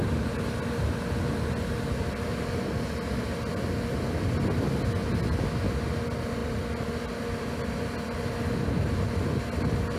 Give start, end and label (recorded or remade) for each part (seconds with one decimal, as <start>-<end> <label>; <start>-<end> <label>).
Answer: 0.0-6.4 recorded; 6.4-7.1 remade; 7.1-10.0 recorded